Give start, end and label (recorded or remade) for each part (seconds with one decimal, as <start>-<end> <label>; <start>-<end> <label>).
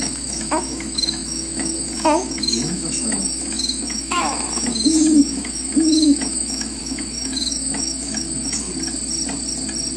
0.0-8.7 remade; 8.7-10.0 recorded